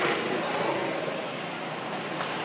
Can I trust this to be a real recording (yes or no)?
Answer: yes